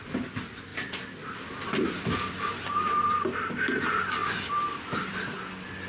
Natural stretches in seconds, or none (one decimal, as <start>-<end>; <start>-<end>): 0.0-0.7; 3.1-4.2; 5.2-5.9